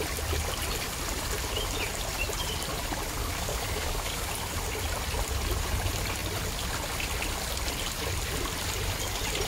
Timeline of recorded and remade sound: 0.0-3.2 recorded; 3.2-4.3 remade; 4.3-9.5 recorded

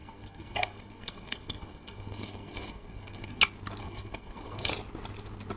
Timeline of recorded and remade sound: 0.0-3.4 remade; 3.4-3.8 recorded; 3.8-4.7 remade; 4.7-5.6 recorded